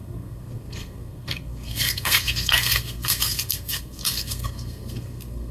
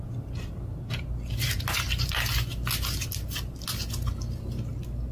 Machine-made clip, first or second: first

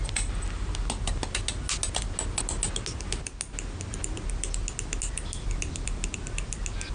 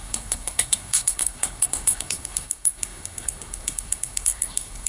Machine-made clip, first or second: second